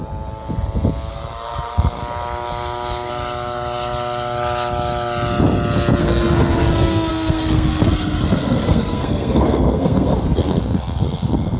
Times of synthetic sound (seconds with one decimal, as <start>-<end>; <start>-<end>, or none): 1.1-2.0; 6.0-11.6